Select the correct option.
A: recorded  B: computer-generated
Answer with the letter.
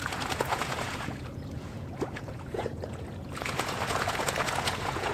B